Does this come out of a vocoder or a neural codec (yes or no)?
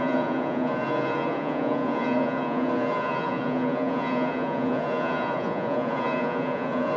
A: yes